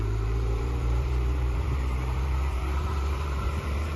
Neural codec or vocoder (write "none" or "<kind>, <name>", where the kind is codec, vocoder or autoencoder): vocoder, BigVGAN v2